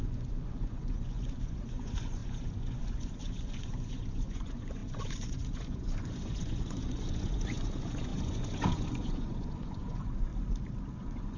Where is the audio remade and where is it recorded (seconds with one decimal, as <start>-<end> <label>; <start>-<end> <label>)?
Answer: 0.0-10.3 remade; 10.3-10.9 recorded; 10.9-11.4 remade